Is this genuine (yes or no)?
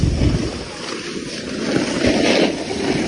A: yes